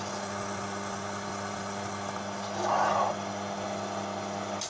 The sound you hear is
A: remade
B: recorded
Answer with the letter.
B